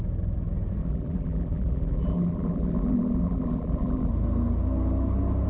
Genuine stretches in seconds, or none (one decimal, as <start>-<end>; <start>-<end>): 0.0-0.8; 4.1-5.5